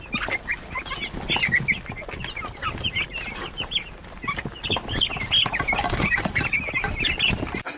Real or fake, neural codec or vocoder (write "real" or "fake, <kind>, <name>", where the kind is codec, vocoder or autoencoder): real